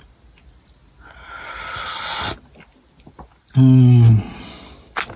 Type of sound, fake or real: real